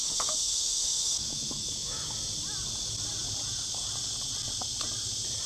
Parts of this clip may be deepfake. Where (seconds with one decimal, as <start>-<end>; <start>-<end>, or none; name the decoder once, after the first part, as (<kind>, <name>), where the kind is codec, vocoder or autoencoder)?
0.0-2.1 (autoencoder, DAC-VAE)